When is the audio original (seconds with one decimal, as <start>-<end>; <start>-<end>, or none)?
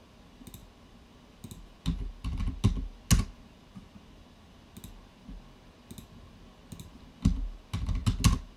0.0-8.6